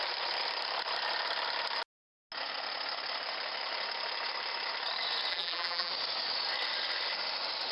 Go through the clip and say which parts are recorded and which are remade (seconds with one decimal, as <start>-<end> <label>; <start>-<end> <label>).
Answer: 0.0-5.3 recorded; 5.3-5.9 remade; 5.9-7.7 recorded